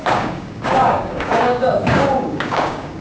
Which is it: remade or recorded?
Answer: remade